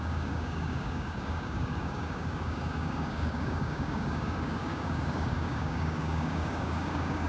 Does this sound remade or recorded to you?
remade